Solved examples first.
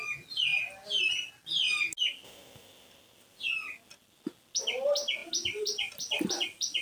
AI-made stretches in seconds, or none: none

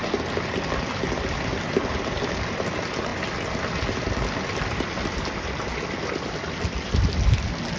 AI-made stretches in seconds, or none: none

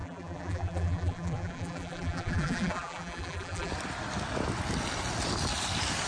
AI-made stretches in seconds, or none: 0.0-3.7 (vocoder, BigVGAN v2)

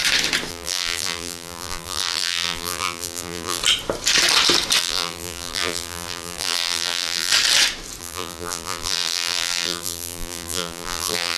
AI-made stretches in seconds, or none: 0.5-3.6 (vocoder, BigVGAN v2); 4.8-7.3; 8.0-11.4